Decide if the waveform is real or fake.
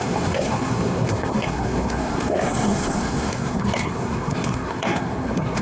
fake